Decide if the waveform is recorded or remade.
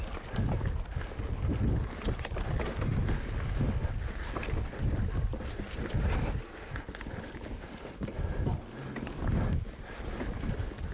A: recorded